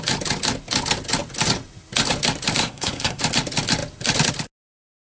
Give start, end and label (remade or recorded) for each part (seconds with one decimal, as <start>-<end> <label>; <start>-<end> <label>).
0.0-2.6 recorded; 2.6-3.2 remade; 3.2-5.2 recorded